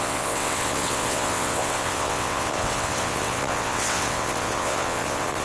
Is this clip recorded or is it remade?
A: remade